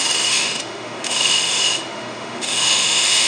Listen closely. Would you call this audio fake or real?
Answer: fake